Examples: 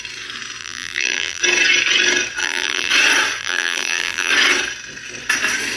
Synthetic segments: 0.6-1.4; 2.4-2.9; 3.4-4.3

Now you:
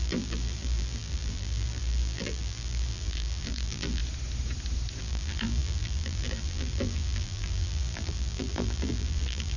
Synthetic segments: 0.0-4.0; 5.0-9.6

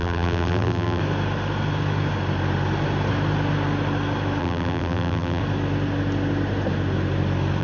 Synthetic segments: 0.0-1.0; 4.4-5.4

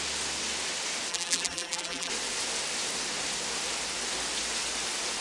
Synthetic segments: 1.1-2.1

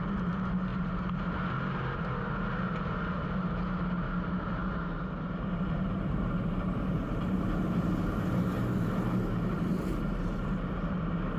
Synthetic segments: 0.0-11.4

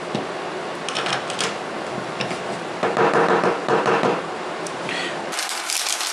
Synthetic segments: 3.6-5.0

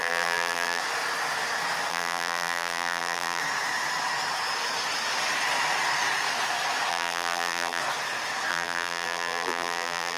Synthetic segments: 0.0-0.8; 1.9-3.4; 6.9-7.8; 8.5-10.2

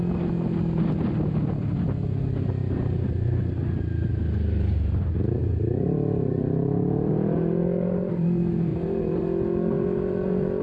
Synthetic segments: 2.6-4.1; 5.4-7.1; 8.7-9.2